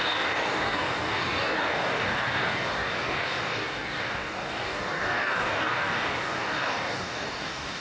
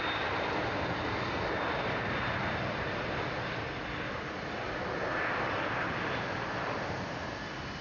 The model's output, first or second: first